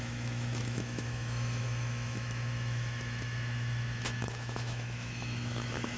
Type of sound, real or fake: fake